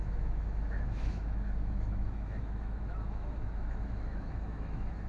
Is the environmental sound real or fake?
fake